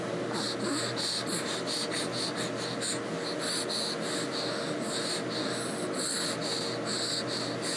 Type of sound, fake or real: real